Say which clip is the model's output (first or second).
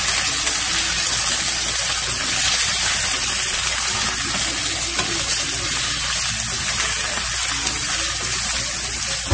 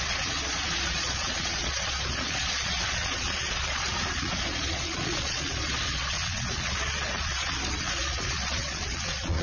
second